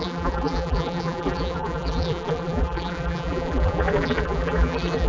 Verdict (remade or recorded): remade